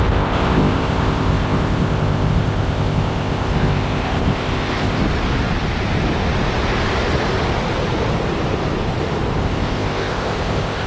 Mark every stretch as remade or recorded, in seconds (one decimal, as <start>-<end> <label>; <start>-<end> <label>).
0.0-5.0 remade; 5.0-9.4 recorded; 9.4-10.9 remade